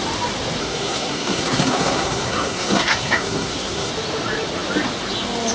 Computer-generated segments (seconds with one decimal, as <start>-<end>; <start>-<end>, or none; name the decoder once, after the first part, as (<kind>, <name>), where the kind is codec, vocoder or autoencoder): 0.6-3.9 (codec, SNAC)